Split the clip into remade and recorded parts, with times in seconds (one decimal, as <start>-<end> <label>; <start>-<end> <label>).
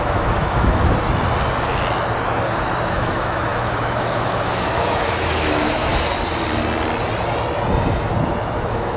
0.0-0.8 remade; 0.8-2.9 recorded; 2.9-5.9 remade; 5.9-8.6 recorded; 8.6-9.0 remade